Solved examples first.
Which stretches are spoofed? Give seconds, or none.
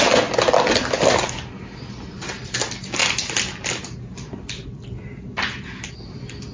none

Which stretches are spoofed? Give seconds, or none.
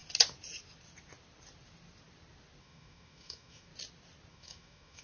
2.6-3.7 (autoencoder, DAC-VAE); 4.3-5.0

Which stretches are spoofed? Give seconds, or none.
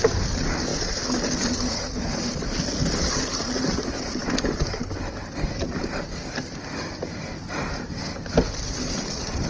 0.7-3.1 (vocoder, BigVGAN v2); 4.2-8.0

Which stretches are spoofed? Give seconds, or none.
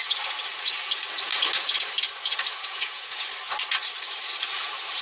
2.5-3.2 (vocoder, Vocos)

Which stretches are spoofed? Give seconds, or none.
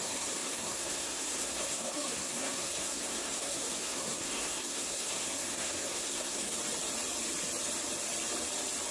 0.0-6.6 (codec, SNAC)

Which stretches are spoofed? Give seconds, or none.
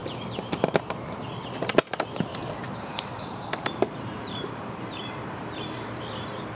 2.3-5.2 (vocoder, BigVGAN v2)